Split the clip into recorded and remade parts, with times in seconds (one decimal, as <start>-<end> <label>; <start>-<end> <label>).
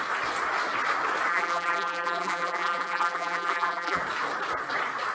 0.0-1.3 recorded; 1.3-4.0 remade; 4.0-5.1 recorded